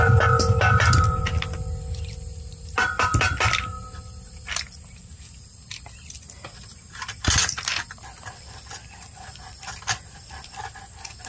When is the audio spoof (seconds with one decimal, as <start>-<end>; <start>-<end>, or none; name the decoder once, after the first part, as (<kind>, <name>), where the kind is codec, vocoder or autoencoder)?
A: none